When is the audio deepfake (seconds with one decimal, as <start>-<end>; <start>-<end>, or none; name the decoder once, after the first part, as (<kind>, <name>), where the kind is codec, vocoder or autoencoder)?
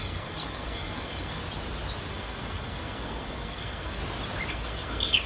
0.0-1.4 (codec, SNAC); 2.1-4.0; 4.5-5.3